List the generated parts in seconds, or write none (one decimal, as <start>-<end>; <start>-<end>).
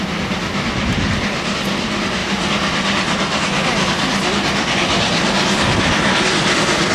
none